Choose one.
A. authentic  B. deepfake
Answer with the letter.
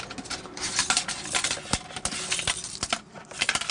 A